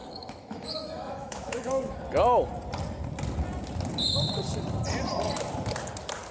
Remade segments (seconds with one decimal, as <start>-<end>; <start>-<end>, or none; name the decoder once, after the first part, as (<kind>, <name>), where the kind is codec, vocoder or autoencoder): 0.0-1.9 (autoencoder, DAC-VAE)